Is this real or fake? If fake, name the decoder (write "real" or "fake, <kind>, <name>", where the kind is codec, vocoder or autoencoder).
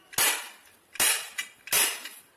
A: real